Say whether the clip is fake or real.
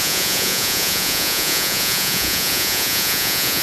fake